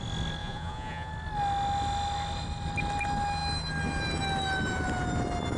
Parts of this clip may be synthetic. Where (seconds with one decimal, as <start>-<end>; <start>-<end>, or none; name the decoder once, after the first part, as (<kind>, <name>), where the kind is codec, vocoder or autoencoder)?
0.4-1.1 (vocoder, Vocos)